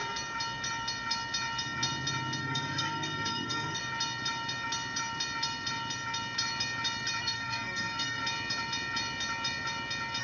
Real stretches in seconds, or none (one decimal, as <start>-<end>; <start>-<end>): 0.0-2.4; 3.8-7.2; 8.2-10.2